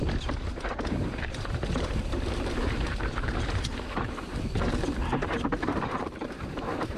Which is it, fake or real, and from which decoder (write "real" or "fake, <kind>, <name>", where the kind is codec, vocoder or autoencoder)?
fake, vocoder, BigVGAN v2